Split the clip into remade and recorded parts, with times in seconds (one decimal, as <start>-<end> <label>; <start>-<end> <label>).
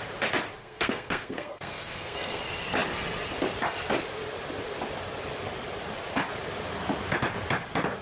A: 0.0-0.6 recorded; 0.6-2.4 remade; 2.4-8.0 recorded